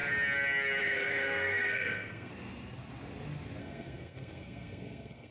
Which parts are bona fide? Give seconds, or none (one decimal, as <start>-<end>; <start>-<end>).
0.0-0.8; 2.3-3.6